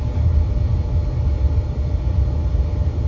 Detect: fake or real real